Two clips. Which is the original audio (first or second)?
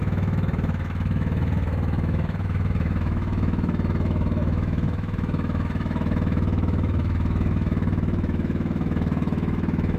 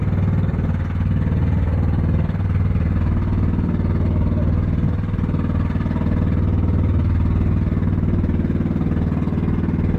second